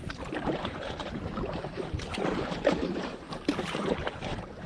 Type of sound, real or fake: fake